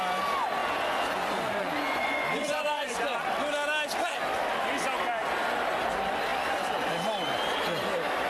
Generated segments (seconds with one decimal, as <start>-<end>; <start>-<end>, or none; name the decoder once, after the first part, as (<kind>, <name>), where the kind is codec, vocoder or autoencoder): 0.6-3.3 (vocoder, Vocos)